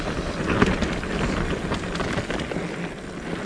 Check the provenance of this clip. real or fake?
real